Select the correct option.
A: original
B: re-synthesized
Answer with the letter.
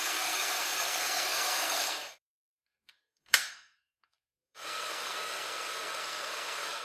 B